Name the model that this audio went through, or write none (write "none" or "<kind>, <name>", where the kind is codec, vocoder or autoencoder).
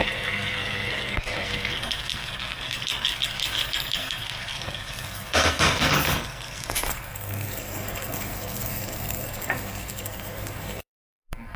codec, SNAC